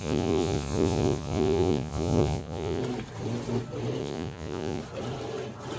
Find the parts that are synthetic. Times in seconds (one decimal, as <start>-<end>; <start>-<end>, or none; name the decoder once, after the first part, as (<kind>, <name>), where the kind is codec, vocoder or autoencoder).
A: 0.0-2.8 (vocoder, Vocos); 4.0-4.8